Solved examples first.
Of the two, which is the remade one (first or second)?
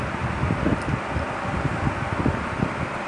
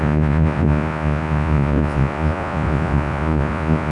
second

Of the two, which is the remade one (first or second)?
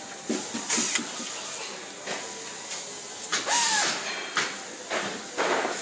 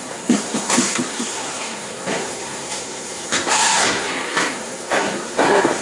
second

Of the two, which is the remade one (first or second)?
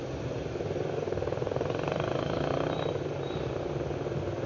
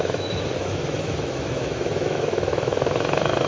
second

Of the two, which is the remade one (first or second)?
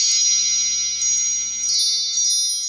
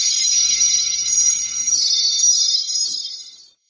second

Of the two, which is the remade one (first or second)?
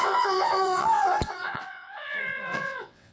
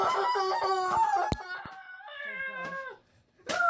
first